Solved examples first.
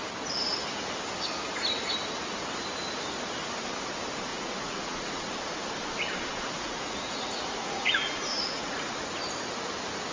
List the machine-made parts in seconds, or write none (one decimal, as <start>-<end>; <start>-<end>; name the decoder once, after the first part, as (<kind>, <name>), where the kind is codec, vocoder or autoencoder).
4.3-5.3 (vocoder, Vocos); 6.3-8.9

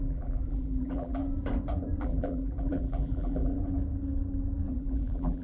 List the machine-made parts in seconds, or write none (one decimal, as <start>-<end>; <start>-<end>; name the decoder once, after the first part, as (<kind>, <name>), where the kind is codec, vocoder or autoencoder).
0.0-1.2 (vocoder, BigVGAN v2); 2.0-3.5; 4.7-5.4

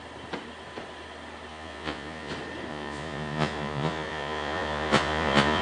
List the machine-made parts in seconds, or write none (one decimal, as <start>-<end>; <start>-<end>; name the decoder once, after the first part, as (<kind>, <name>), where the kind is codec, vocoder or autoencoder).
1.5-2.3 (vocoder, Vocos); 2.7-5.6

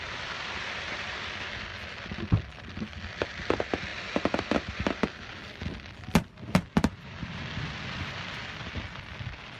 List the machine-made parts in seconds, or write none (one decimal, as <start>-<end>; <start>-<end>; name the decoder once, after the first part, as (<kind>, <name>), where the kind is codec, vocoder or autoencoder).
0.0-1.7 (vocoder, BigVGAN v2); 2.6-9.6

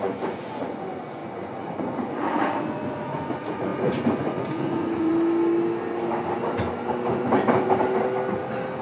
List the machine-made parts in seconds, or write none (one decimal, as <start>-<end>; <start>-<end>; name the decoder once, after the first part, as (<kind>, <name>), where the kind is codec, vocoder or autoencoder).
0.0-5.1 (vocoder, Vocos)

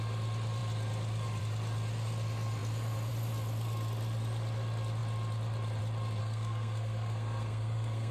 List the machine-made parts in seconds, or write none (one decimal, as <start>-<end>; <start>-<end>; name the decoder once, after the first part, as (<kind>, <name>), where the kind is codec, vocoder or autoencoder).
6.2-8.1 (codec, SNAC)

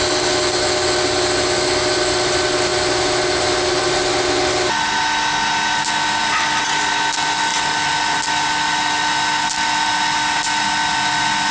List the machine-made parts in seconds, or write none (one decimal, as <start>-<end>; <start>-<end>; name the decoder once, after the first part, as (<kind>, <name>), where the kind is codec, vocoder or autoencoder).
none

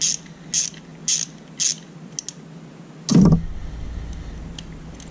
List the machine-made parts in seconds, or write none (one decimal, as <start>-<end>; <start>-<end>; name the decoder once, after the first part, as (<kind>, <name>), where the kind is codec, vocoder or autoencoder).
none